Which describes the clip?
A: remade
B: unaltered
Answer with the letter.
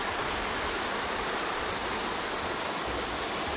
B